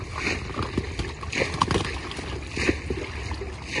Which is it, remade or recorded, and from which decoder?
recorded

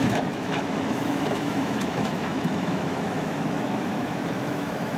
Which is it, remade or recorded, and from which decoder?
remade, autoencoder, DAC-VAE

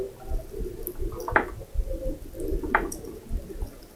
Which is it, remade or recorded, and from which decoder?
recorded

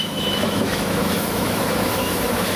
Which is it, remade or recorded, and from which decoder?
remade, autoencoder, DAC-VAE